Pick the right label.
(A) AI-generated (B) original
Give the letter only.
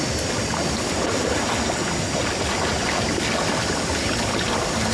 B